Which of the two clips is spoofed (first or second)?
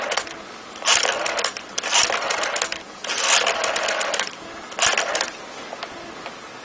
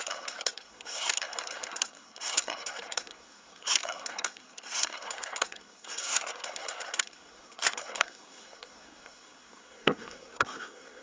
second